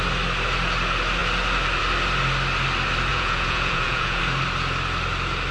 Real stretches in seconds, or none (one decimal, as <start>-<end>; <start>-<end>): 0.0-3.1; 4.2-5.5